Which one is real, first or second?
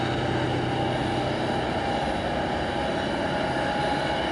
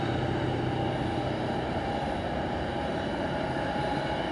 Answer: first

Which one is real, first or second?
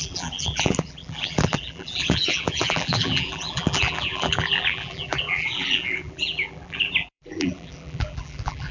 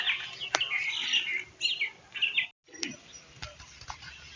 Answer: second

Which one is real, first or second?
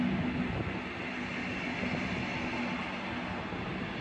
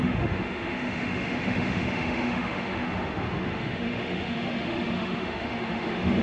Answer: first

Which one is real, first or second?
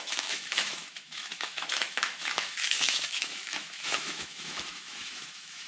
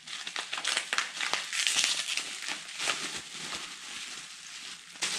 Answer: second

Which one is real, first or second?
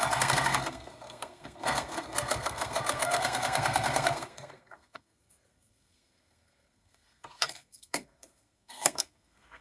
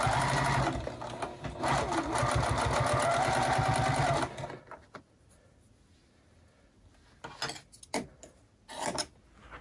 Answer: second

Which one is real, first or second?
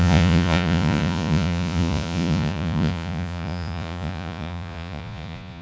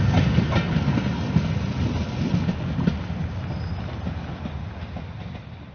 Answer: second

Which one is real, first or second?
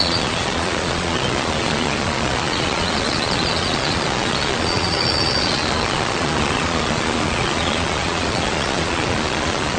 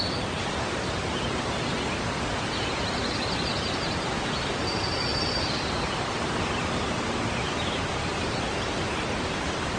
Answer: second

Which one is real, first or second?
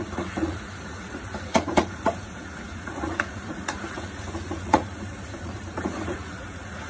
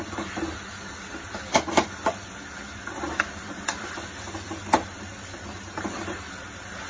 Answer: second